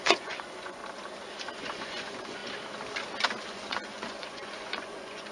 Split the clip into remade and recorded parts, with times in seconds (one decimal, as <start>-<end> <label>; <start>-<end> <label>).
0.0-0.8 remade; 0.8-1.6 recorded; 1.6-2.4 remade; 2.4-3.5 recorded; 3.5-5.3 remade